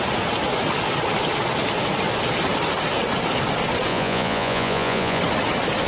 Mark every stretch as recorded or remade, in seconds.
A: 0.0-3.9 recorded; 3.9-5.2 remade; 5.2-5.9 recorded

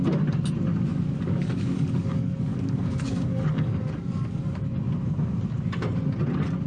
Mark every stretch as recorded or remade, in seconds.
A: 0.0-0.9 recorded; 0.9-4.6 remade; 4.6-6.7 recorded

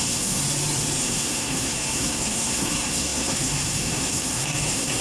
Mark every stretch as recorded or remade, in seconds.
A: 0.0-0.4 remade; 0.4-1.0 recorded; 1.0-5.0 remade

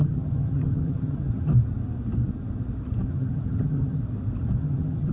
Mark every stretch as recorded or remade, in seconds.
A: 0.0-1.5 remade; 1.5-3.1 recorded; 3.1-4.0 remade; 4.0-4.6 recorded; 4.6-5.1 remade

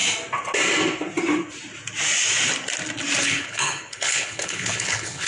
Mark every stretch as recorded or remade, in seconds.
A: 0.0-3.2 recorded; 3.2-5.3 remade